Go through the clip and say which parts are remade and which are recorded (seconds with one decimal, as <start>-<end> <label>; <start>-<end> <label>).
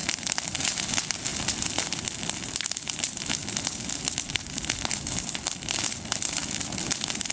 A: 0.0-7.3 recorded